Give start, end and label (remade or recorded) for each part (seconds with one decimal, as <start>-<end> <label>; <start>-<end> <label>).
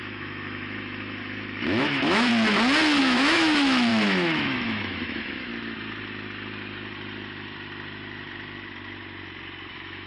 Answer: 0.0-2.3 remade; 2.3-3.0 recorded; 3.0-5.5 remade; 5.5-9.7 recorded; 9.7-10.1 remade